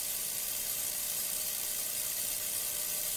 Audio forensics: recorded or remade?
remade